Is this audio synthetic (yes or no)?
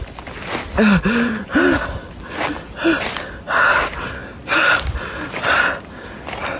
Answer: no